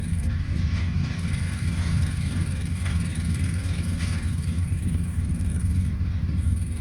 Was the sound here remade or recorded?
remade